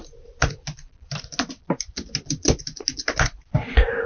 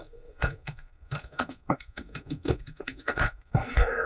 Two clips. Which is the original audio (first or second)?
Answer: first